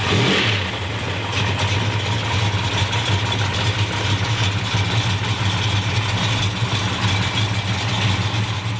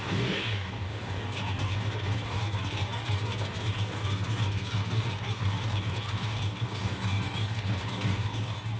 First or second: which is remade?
second